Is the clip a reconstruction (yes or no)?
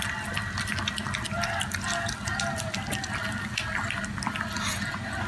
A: no